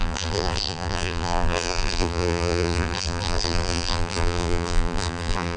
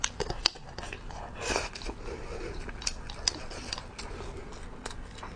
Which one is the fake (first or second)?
first